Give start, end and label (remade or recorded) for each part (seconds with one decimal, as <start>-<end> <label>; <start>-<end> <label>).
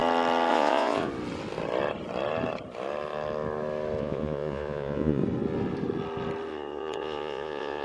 0.0-0.5 recorded; 0.5-1.1 remade; 1.1-4.0 recorded; 4.0-5.2 remade; 5.2-6.5 recorded; 6.5-7.8 remade